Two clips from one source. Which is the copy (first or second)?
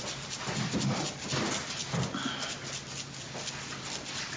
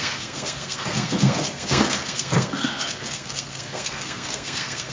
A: second